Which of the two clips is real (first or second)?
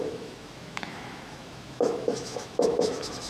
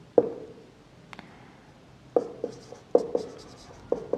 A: second